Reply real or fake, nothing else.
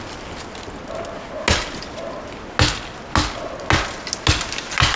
real